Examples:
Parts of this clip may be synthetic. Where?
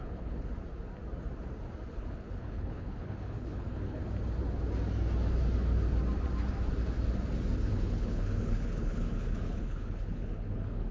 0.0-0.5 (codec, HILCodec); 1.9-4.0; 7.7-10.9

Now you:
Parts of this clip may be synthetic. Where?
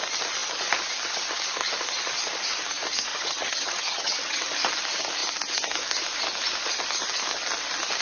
3.1-4.4 (vocoder, HiFi-GAN)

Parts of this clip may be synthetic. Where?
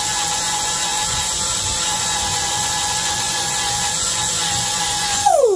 0.0-5.6 (vocoder, Vocos)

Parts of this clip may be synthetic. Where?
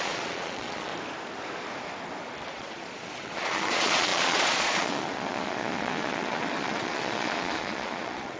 0.0-0.9 (vocoder, Vocos); 2.5-8.4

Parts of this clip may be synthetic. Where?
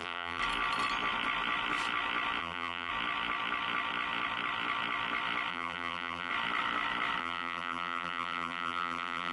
0.0-0.4 (vocoder, BigVGAN v2); 2.4-2.9; 5.5-6.3; 7.2-9.3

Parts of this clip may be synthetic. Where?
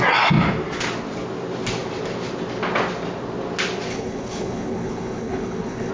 3.9-5.9 (codec, HILCodec)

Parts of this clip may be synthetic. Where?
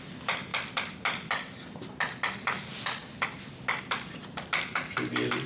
none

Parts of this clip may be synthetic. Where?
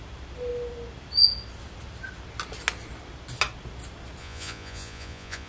4.2-5.5 (vocoder, Vocos)